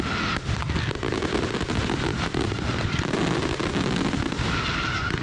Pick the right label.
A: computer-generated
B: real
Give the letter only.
B